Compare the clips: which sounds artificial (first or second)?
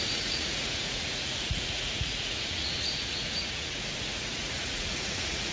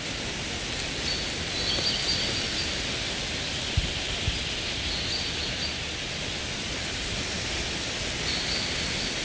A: first